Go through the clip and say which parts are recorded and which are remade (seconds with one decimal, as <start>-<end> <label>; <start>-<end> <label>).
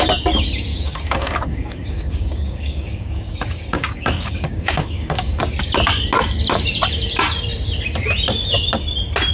0.0-0.7 recorded; 0.7-5.4 remade; 5.4-9.3 recorded